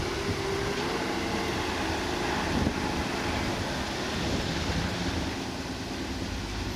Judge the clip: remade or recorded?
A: recorded